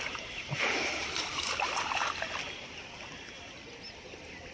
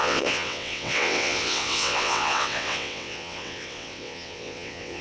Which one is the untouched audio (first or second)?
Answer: first